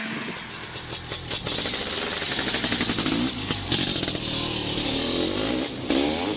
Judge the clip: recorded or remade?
recorded